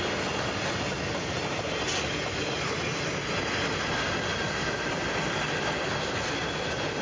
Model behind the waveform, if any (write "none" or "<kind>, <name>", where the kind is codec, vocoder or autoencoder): none